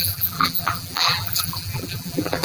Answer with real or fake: fake